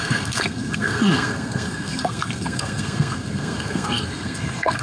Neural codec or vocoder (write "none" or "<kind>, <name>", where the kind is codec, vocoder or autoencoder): codec, SNAC